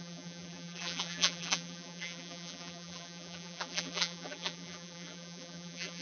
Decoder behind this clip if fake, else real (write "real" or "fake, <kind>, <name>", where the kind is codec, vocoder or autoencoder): fake, vocoder, BigVGAN v2